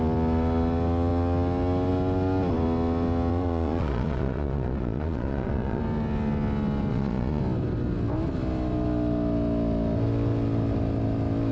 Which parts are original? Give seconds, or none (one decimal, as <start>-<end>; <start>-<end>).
0.0-3.3; 5.8-6.9; 7.4-11.5